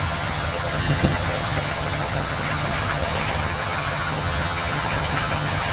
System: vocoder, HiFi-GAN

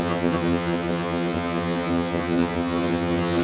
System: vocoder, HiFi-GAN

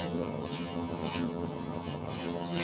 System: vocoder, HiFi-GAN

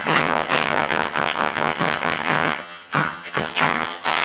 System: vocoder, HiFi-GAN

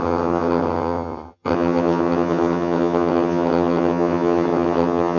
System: vocoder, HiFi-GAN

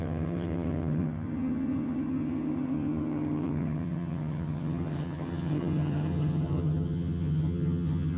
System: vocoder, HiFi-GAN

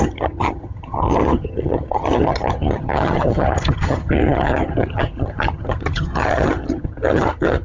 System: vocoder, HiFi-GAN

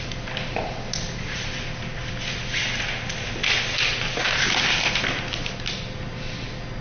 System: none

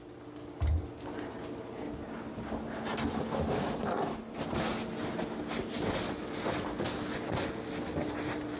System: none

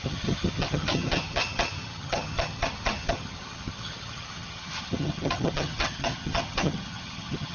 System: vocoder, HiFi-GAN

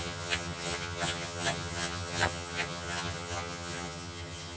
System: vocoder, HiFi-GAN